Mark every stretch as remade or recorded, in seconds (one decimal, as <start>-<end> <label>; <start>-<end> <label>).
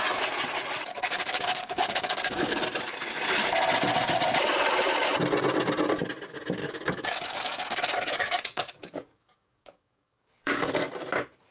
0.0-0.9 recorded; 0.9-2.6 remade; 2.6-6.6 recorded; 6.6-10.7 remade; 10.7-11.5 recorded